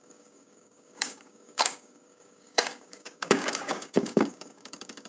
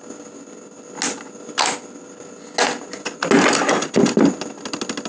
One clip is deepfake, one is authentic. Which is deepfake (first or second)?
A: first